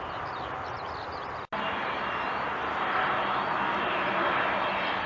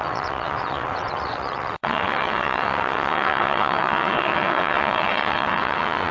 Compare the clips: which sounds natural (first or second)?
first